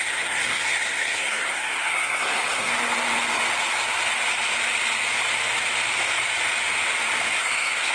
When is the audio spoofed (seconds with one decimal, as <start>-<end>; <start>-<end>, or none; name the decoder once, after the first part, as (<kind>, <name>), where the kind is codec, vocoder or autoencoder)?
0.0-2.7 (codec, SNAC); 7.4-7.9